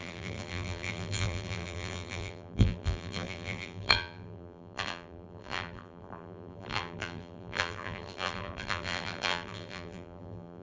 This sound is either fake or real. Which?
fake